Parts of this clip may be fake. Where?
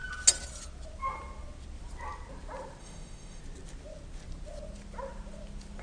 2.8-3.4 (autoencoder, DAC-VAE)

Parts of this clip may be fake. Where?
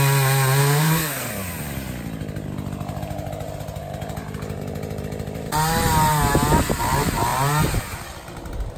0.6-1.3 (codec, SNAC)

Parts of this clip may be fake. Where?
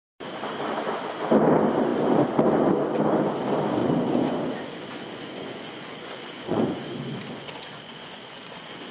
3.8-8.9 (vocoder, Vocos)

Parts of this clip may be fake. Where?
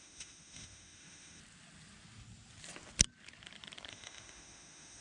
0.0-1.4 (autoencoder, DAC-VAE); 3.9-5.0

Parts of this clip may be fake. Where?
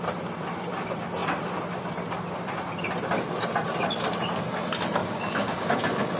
5.0-5.8 (codec, DAC)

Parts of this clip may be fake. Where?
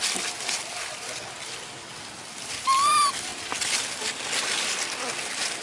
none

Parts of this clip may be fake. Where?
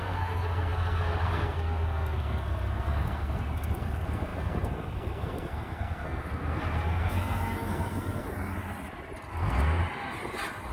0.0-8.5 (codec, SNAC); 9.3-9.8